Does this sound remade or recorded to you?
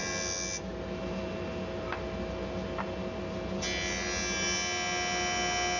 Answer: recorded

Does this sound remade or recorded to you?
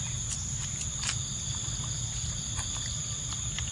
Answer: recorded